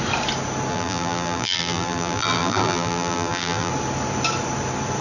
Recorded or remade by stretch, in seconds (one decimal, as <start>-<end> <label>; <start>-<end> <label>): 0.0-0.7 recorded; 0.7-3.7 remade; 3.7-5.0 recorded